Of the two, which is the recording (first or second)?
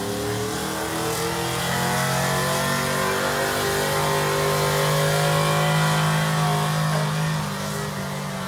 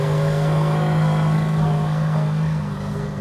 first